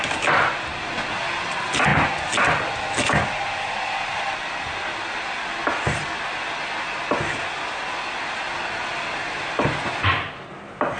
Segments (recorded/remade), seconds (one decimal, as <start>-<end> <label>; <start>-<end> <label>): 0.0-11.0 recorded